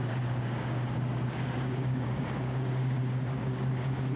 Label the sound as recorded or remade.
remade